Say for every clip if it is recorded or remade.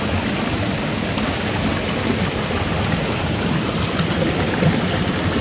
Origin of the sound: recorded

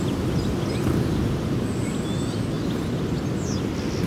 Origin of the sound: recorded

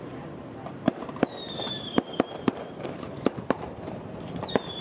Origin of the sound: remade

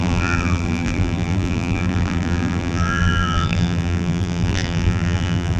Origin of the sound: remade